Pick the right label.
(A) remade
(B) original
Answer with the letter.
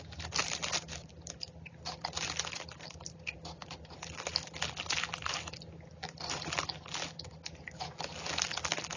B